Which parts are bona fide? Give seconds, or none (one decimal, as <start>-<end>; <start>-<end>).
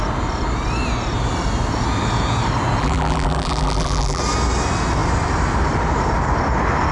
0.0-2.8; 4.2-6.9